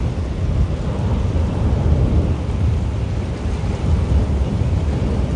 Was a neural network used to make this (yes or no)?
no